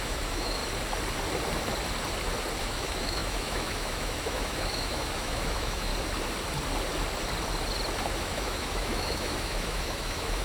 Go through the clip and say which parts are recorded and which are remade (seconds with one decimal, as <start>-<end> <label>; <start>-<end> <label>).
0.0-0.6 remade; 0.6-2.6 recorded; 2.6-5.9 remade; 5.9-8.2 recorded; 8.2-10.4 remade